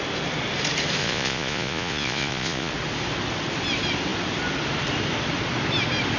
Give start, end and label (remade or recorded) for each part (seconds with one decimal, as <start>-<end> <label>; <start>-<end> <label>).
0.0-1.0 recorded; 1.0-2.7 remade; 2.7-6.2 recorded